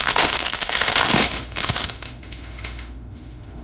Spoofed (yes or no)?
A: yes